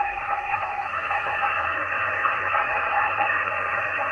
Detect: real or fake fake